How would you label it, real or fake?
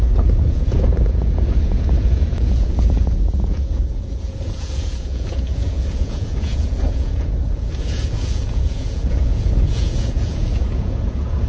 fake